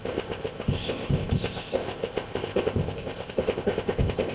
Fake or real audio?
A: fake